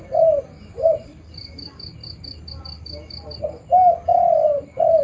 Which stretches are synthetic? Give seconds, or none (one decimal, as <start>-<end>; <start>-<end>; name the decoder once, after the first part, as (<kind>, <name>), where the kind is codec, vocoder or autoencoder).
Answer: none